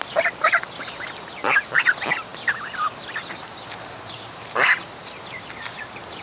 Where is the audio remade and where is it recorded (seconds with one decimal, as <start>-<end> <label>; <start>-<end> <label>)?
0.0-6.2 recorded